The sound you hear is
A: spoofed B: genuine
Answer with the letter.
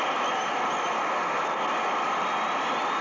B